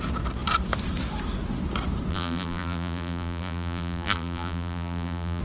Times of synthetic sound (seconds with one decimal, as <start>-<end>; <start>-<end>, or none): 2.1-5.4